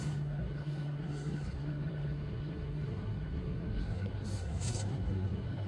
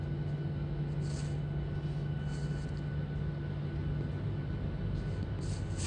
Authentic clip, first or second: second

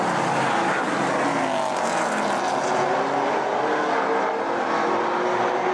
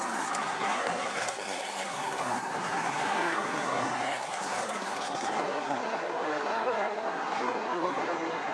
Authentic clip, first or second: first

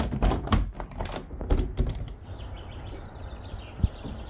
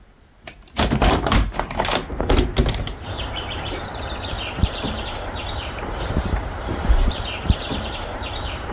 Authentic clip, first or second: first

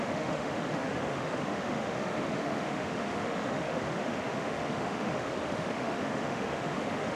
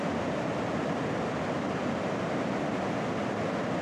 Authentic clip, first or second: second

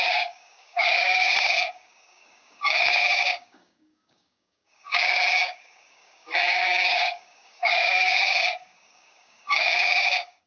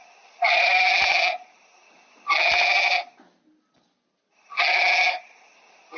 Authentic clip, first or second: second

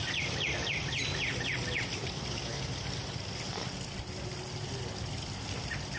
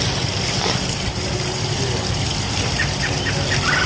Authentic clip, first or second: first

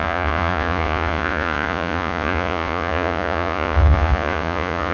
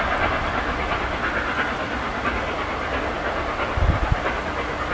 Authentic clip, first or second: second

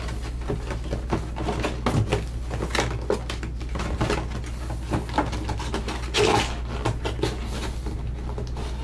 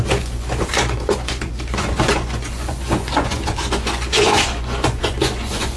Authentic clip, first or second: first